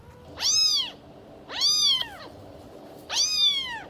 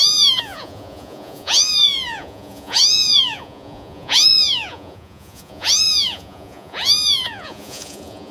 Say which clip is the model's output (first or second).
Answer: second